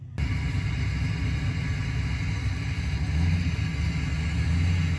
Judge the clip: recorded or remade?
recorded